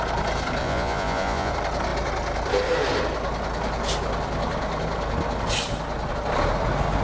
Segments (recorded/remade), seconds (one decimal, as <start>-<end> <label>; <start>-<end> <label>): 0.0-0.6 recorded; 0.6-1.5 remade; 1.5-7.0 recorded